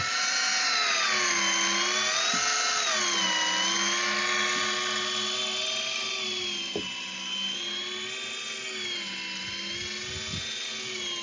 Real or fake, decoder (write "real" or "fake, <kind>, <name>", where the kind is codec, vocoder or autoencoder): real